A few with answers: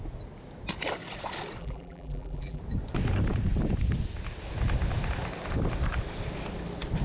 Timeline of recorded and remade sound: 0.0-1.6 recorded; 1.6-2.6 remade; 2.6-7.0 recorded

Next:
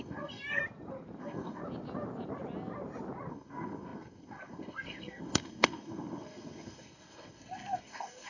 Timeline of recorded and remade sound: 0.0-0.6 remade; 0.6-1.2 recorded; 1.2-1.6 remade; 1.6-3.3 recorded; 3.3-8.3 remade

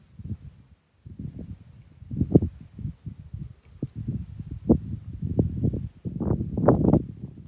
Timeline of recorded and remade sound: 0.0-7.5 recorded

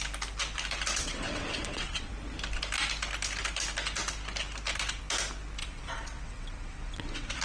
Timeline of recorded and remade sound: 0.0-1.0 recorded; 1.0-2.1 remade; 2.1-5.6 recorded; 5.6-7.4 remade

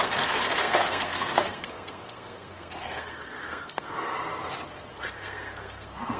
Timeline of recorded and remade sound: 0.0-4.1 remade; 4.1-4.9 recorded; 4.9-6.2 remade

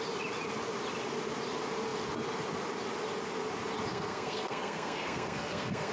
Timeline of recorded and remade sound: 0.0-3.9 recorded; 3.9-5.9 remade

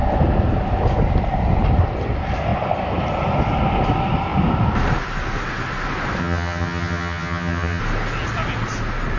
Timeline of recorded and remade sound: 0.0-6.2 recorded; 6.2-7.8 remade; 7.8-9.2 recorded

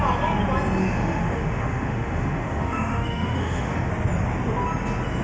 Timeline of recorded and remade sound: 0.0-0.8 recorded; 0.8-3.9 remade; 3.9-5.2 recorded